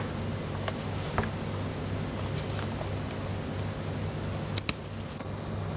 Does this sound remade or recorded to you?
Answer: recorded